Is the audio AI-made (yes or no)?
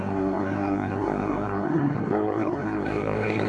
yes